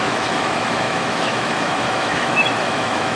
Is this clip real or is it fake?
fake